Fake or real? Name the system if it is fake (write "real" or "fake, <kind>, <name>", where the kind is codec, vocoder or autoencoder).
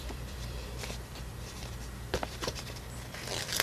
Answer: fake, vocoder, BigVGAN v2